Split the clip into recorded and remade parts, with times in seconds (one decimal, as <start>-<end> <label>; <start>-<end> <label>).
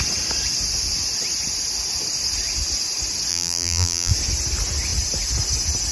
0.0-3.3 recorded; 3.3-4.1 remade; 4.1-5.9 recorded